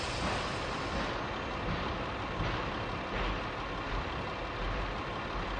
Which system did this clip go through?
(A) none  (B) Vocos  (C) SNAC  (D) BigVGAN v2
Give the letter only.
A